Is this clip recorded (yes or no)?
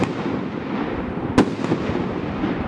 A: yes